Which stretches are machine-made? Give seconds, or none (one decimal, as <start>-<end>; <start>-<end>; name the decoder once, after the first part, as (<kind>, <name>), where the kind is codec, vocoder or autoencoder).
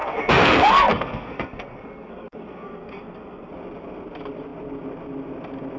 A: 0.0-3.5 (codec, SNAC)